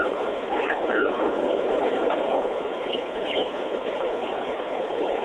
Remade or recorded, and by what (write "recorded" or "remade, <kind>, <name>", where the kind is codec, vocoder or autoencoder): remade, codec, HILCodec